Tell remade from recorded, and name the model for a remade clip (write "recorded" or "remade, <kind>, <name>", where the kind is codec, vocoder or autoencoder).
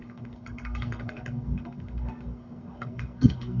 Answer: remade, codec, SNAC